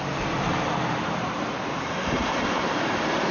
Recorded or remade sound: remade